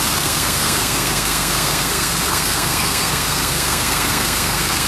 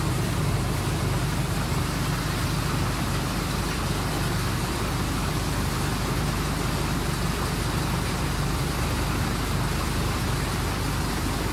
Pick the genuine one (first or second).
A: second